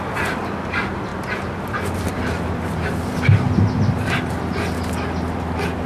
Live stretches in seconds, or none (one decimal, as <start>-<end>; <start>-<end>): 0.0-5.9